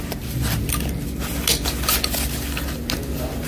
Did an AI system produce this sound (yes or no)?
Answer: no